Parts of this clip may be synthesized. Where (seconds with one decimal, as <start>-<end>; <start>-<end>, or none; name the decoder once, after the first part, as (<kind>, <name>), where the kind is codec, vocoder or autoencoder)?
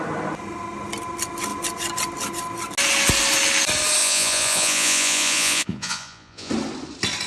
4.0-6.5 (vocoder, Vocos)